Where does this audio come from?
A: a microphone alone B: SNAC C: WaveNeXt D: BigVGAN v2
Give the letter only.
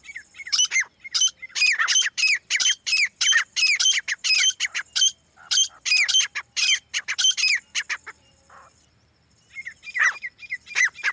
D